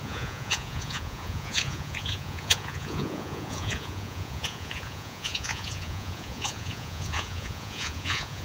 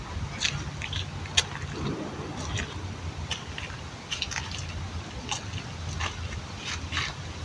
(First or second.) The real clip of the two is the second